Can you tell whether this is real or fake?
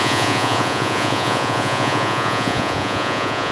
fake